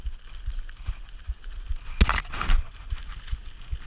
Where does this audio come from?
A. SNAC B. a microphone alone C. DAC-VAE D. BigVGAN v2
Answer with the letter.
B